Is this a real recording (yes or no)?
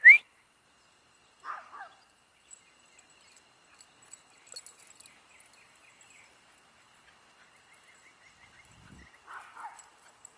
yes